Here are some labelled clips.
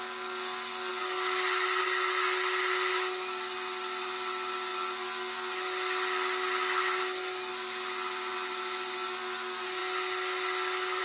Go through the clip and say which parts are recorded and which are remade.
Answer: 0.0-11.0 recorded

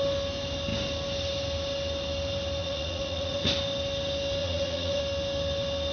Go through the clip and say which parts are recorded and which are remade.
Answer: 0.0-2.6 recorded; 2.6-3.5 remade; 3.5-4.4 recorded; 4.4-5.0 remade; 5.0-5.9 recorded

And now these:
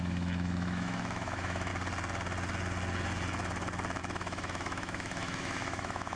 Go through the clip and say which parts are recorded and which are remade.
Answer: 0.0-1.7 remade; 1.7-4.0 recorded; 4.0-6.2 remade